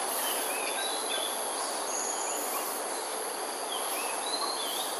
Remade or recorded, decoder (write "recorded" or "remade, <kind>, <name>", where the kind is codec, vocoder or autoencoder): recorded